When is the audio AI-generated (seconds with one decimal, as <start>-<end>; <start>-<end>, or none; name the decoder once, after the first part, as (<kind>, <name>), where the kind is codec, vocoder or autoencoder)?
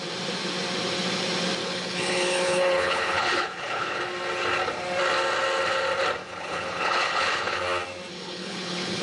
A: 1.6-4.0 (codec, HILCodec); 6.2-7.6; 8.1-9.0